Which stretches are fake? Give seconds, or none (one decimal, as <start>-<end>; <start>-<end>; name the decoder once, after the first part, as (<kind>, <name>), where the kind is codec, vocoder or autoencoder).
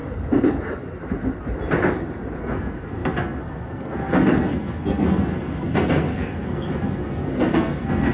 2.4-8.1 (codec, SNAC)